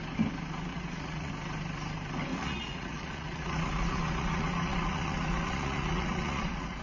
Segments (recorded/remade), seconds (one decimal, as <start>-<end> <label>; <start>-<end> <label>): 0.0-0.7 recorded; 0.7-1.3 remade; 1.3-2.3 recorded; 2.3-6.8 remade